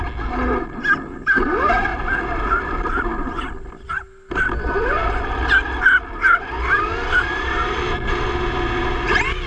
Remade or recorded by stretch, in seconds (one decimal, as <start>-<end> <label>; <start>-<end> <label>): 0.0-1.9 recorded; 1.9-3.9 remade; 3.9-9.5 recorded